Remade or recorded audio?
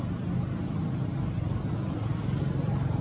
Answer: recorded